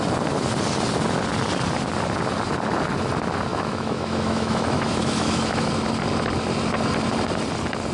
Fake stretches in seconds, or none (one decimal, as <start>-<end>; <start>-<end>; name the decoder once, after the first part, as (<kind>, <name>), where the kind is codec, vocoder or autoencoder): 3.5-5.7 (autoencoder, DAC-VAE)